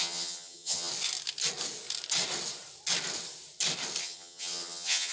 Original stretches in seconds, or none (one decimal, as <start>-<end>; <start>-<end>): 0.9-4.0